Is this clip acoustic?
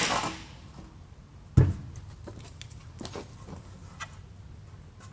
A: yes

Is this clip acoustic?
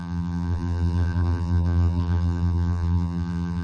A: no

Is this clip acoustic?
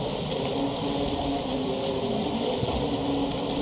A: yes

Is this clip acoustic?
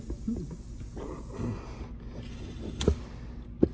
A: yes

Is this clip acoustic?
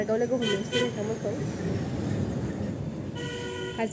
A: yes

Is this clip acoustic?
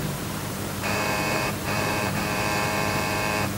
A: no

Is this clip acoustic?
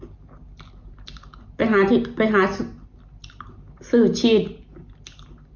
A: yes